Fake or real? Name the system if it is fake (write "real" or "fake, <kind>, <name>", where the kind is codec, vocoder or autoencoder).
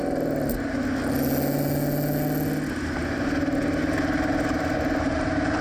real